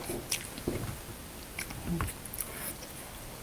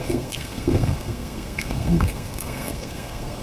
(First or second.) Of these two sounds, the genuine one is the first